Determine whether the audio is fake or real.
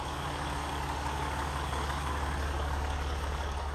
fake